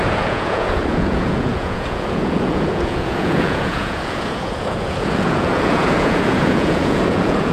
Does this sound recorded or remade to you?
remade